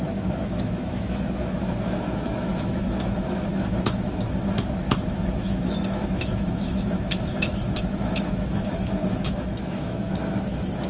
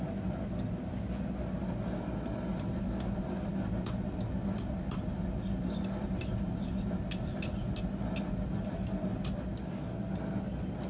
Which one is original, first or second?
second